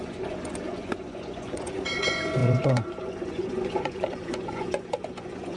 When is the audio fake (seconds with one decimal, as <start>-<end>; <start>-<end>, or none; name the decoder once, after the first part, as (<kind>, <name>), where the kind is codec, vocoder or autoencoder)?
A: 0.0-5.6 (vocoder, Vocos)